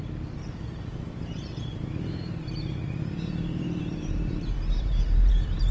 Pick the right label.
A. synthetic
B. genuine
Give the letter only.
A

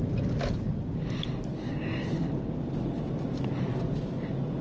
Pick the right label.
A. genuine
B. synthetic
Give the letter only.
A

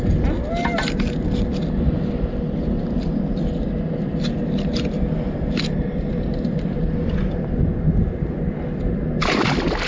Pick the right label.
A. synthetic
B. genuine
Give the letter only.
B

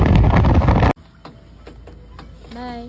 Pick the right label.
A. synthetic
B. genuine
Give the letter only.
B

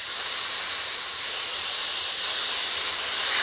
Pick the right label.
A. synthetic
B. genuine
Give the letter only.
B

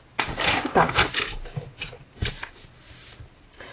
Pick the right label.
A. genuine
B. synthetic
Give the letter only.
A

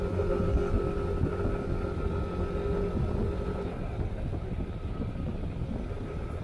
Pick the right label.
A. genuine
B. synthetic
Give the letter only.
A